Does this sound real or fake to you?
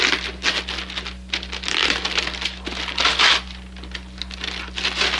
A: real